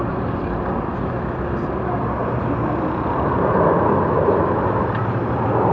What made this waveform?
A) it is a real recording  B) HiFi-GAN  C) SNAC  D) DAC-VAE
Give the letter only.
A